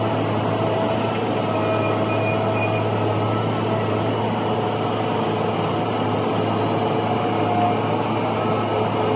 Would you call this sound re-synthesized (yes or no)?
no